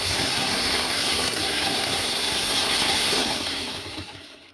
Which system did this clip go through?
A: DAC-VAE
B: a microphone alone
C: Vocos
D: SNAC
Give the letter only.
D